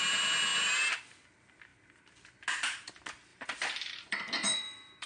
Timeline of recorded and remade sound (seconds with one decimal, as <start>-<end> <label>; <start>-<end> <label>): 0.0-3.3 recorded; 3.3-5.1 remade

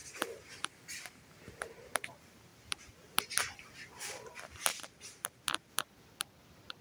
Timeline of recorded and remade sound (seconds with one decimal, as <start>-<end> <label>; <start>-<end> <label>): 0.0-0.7 recorded; 0.7-4.7 remade; 4.7-5.7 recorded; 5.7-6.8 remade

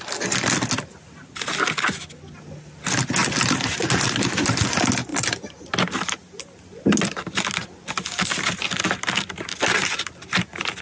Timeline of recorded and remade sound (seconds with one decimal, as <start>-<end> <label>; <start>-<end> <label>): 0.0-10.8 recorded